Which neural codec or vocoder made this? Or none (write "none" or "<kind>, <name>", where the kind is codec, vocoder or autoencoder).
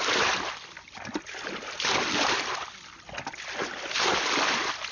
none